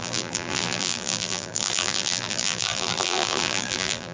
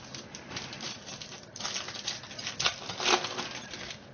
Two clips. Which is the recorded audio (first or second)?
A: second